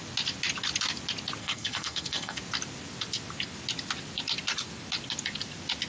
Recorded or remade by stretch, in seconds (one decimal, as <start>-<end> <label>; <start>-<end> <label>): 0.0-1.4 recorded; 1.4-2.4 remade; 2.4-5.9 recorded